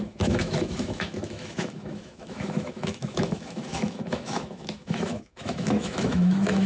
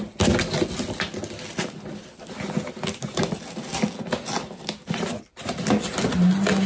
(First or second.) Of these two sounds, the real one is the second